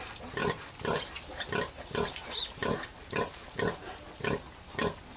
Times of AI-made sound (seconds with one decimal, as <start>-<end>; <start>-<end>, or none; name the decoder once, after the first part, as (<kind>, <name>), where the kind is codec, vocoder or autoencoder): none